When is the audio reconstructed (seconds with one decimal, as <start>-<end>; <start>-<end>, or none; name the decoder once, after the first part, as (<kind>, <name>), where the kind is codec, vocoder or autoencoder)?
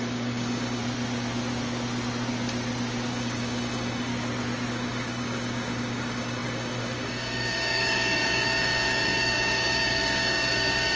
0.0-0.8 (codec, DAC); 3.1-4.1; 4.7-11.0